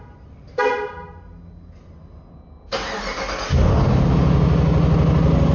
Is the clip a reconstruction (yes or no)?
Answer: no